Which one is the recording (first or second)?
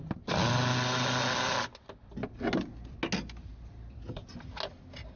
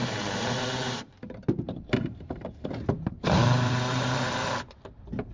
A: first